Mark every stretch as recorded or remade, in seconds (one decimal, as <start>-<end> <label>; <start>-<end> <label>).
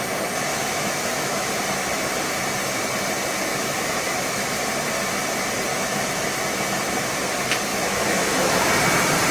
0.0-0.5 recorded; 0.5-1.6 remade; 1.6-3.5 recorded; 3.5-4.7 remade; 4.7-5.7 recorded; 5.7-6.4 remade; 6.4-7.7 recorded; 7.7-8.7 remade; 8.7-9.3 recorded